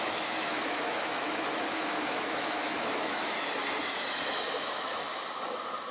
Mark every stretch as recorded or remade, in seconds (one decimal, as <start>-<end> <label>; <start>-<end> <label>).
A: 0.0-3.6 remade; 3.6-4.5 recorded; 4.5-5.1 remade; 5.1-5.9 recorded